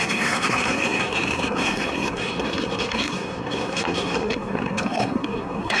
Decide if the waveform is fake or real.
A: fake